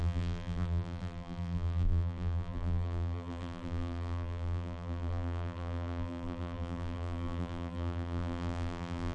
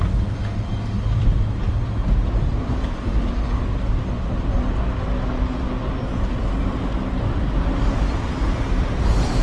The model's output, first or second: first